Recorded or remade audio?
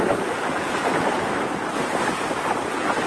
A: recorded